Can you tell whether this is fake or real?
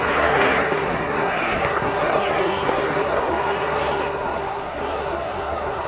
fake